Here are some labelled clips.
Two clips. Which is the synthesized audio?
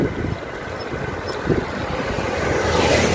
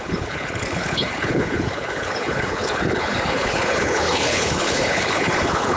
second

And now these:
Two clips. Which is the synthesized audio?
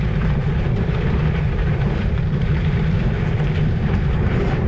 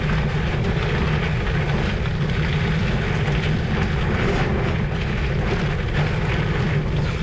first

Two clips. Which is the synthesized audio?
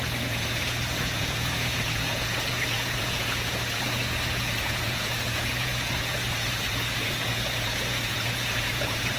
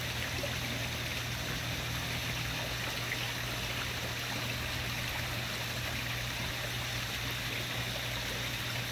first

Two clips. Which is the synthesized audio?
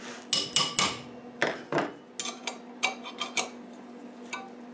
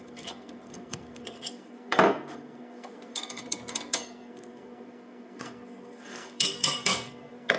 second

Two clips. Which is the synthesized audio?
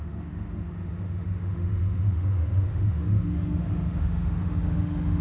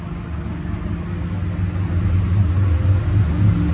first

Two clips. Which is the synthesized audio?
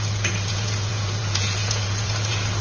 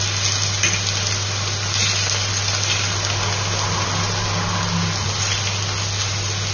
first